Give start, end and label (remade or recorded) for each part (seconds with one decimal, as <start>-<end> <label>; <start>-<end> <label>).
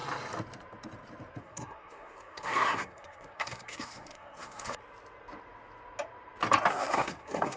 0.0-1.4 recorded; 1.4-4.8 remade; 4.8-6.7 recorded; 6.7-7.6 remade